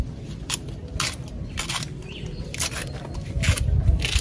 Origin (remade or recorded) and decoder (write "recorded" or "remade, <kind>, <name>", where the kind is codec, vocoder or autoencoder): recorded